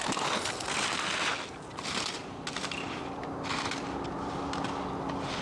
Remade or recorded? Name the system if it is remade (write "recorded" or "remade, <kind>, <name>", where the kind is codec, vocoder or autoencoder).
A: recorded